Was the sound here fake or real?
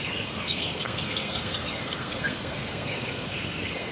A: fake